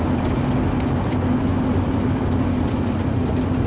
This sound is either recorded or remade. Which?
recorded